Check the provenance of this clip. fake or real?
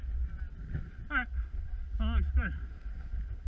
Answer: real